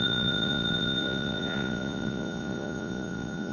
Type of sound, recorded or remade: remade